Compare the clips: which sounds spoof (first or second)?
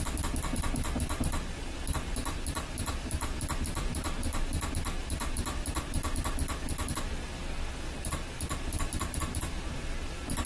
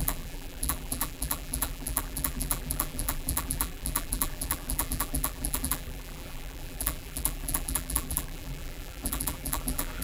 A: second